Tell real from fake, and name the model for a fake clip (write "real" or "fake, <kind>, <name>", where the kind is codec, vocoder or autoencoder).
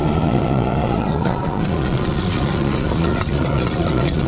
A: fake, vocoder, Vocos